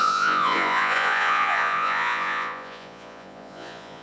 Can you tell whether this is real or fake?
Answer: fake